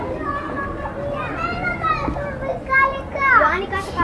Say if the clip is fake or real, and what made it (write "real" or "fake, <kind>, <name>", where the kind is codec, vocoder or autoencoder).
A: real